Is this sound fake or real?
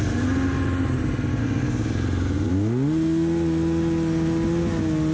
real